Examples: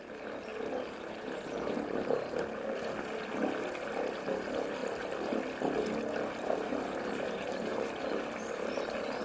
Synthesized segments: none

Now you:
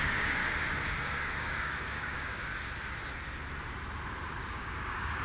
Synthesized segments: 0.0-0.4 (codec, DAC); 0.9-2.5; 4.5-5.2

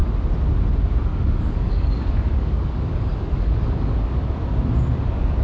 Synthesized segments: 1.1-4.3 (codec, DAC)

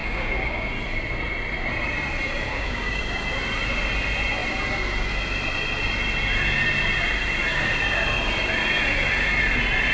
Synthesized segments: 0.0-0.7 (codec, DAC); 2.5-3.0